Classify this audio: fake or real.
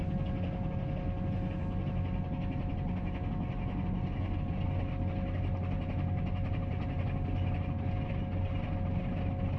real